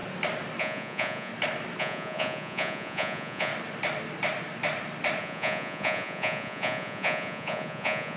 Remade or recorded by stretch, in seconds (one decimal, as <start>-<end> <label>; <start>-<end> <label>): 0.0-0.6 recorded; 0.6-1.3 remade; 1.3-1.8 recorded; 1.8-3.5 remade; 3.5-5.2 recorded; 5.2-8.2 remade